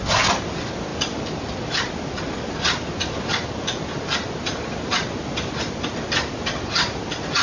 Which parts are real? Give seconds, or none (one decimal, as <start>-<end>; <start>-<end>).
0.0-7.4